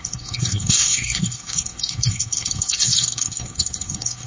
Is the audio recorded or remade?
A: remade